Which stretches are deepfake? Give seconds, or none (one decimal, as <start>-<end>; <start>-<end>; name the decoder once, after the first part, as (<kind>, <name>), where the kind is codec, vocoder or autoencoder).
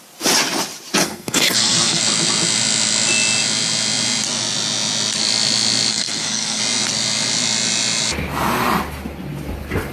1.0-2.0 (codec, SNAC); 5.9-6.6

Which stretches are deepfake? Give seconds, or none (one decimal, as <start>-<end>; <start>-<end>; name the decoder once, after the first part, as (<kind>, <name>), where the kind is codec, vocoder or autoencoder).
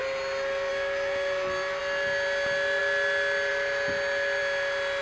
none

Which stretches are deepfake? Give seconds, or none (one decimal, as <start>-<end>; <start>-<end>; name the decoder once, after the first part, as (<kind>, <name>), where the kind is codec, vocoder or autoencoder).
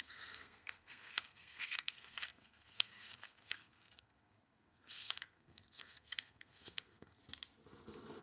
0.0-7.2 (codec, SNAC)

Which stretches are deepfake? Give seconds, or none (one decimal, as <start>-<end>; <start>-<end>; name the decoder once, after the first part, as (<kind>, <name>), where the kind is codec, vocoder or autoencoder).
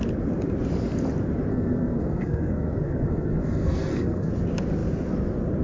1.5-4.3 (codec, SNAC)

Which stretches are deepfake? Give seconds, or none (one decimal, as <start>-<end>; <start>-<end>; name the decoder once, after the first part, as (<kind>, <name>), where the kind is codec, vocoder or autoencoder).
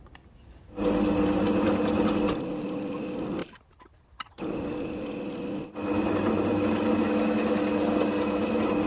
none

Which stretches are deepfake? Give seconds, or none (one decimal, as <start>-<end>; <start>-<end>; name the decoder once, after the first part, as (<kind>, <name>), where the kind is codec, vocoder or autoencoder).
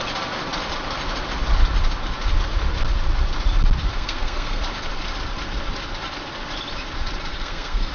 3.9-4.6 (codec, SNAC); 7.3-7.9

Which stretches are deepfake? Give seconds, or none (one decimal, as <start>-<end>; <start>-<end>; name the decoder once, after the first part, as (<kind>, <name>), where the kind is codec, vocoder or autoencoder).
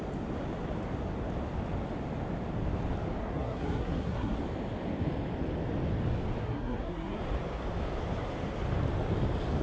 3.2-4.3 (codec, SNAC); 6.4-7.2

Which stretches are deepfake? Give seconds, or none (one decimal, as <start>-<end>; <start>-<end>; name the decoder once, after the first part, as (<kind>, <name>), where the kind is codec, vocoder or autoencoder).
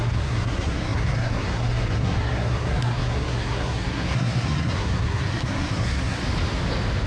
0.0-6.2 (codec, SNAC)